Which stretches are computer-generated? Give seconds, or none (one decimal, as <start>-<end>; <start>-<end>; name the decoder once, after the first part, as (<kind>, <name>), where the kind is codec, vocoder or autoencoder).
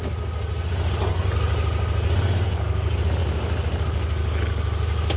none